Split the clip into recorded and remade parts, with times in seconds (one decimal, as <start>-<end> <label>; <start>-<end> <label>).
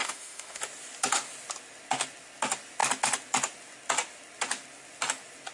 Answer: 0.0-0.6 remade; 0.6-5.5 recorded